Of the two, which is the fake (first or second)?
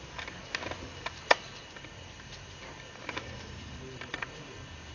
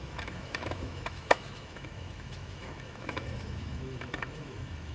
second